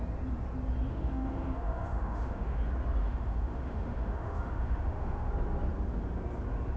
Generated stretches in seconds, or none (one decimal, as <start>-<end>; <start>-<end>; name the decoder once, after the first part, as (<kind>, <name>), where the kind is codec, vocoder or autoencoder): 0.9-2.6 (autoencoder, DAC-VAE); 3.0-5.3